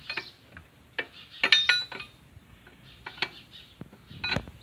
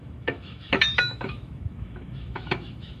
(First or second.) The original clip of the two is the first